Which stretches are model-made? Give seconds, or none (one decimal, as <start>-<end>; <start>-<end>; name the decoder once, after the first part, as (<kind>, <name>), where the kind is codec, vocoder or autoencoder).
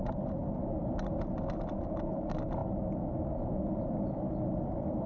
none